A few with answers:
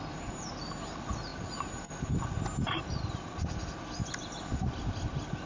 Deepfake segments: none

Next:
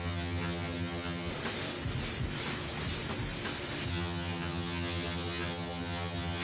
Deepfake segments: 0.0-1.3 (vocoder, HiFi-GAN); 3.9-6.4

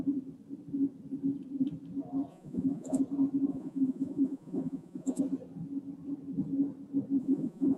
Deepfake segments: 2.3-3.0 (vocoder, Vocos); 3.5-5.2; 7.2-7.8

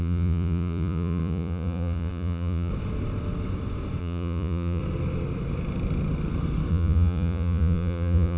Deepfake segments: 0.0-2.7 (vocoder, Vocos); 4.0-4.8; 6.7-8.4

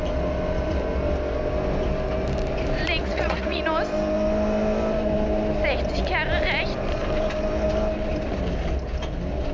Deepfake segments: 3.0-3.6 (vocoder, Vocos)

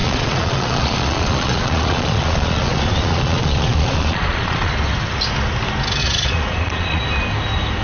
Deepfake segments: 0.0-4.7 (vocoder, Vocos); 6.0-7.0

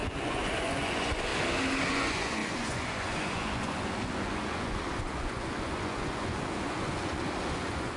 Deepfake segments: 0.0-1.3 (vocoder, Vocos); 1.9-8.0